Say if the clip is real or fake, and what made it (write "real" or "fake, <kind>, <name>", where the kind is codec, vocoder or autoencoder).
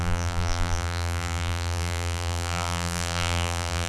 fake, vocoder, BigVGAN v2